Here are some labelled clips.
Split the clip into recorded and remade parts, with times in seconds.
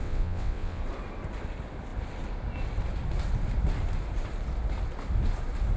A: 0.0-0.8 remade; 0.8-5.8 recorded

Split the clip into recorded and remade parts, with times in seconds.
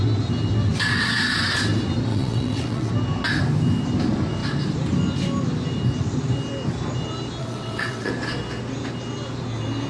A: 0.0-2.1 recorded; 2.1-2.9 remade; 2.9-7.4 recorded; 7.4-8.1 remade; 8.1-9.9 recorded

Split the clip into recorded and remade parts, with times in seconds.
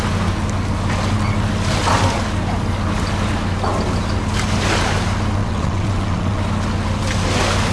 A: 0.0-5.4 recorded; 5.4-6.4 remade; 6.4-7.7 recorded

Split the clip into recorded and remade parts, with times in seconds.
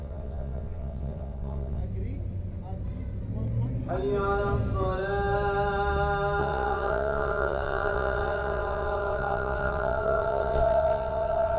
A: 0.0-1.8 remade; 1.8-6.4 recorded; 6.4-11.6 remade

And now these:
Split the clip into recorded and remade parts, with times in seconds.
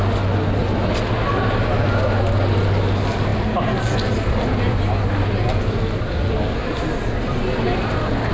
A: 0.0-8.3 recorded